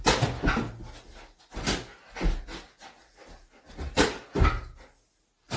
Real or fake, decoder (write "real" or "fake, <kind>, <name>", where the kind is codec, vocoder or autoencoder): real